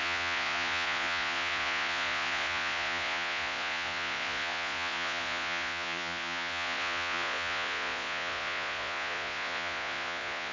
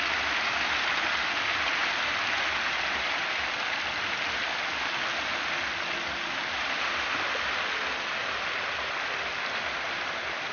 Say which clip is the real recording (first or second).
second